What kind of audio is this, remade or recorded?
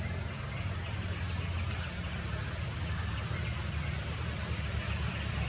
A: recorded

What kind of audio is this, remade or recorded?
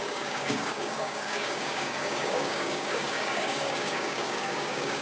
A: remade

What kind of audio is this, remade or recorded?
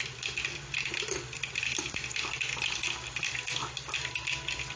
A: recorded